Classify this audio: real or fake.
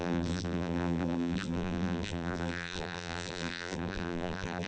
fake